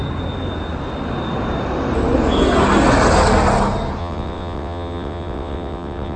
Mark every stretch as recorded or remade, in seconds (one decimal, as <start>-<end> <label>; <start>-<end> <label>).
0.0-4.0 recorded; 4.0-6.2 remade